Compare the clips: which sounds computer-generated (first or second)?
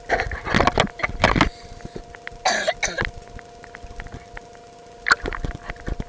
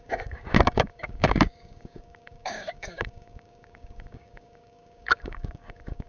second